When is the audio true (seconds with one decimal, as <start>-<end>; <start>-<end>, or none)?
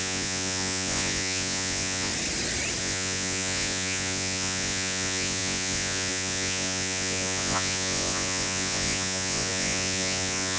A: 2.1-2.8